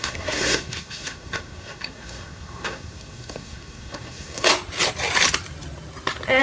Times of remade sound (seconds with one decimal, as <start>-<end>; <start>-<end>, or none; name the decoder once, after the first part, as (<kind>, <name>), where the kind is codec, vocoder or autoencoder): 0.0-4.5 (codec, SNAC)